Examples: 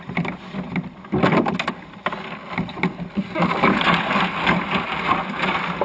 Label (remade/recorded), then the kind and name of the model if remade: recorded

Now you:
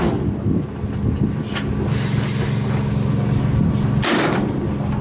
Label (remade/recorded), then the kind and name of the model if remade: recorded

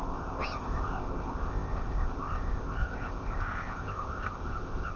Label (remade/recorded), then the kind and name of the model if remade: remade, codec, ZipCodec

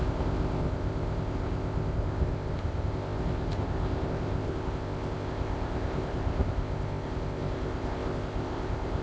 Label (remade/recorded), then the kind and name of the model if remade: remade, codec, ZipCodec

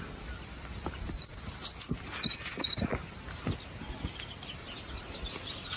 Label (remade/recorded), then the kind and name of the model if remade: recorded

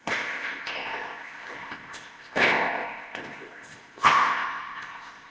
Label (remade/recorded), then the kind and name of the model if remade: remade, codec, ZipCodec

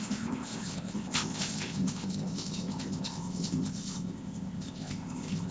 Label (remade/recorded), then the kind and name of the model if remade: remade, codec, ZipCodec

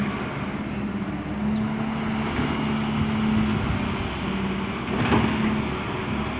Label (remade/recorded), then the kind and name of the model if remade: recorded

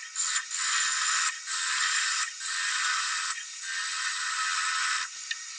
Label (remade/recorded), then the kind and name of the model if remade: recorded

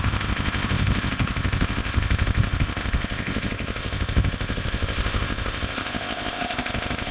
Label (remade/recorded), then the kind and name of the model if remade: remade, codec, ZipCodec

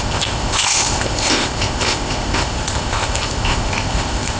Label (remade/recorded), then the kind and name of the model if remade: remade, codec, ZipCodec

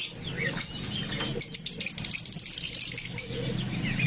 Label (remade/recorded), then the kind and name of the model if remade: recorded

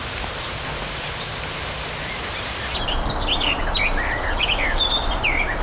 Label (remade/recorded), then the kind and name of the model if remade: recorded